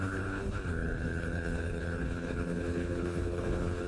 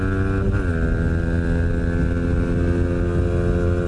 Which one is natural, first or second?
second